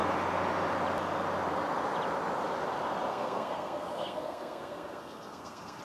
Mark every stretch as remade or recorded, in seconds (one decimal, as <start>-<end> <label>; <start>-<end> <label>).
0.0-3.1 recorded; 3.1-5.8 remade